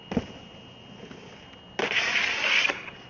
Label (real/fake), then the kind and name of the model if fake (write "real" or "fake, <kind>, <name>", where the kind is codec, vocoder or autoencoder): real